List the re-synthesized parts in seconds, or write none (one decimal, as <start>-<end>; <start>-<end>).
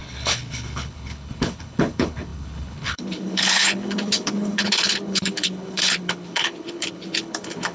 0.0-7.7